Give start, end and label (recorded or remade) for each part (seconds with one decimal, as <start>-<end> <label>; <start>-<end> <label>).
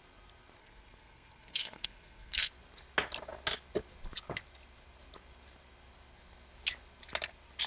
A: 0.0-0.6 recorded; 0.6-2.5 remade; 2.5-7.7 recorded